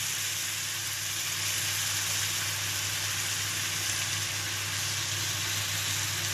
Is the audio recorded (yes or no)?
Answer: yes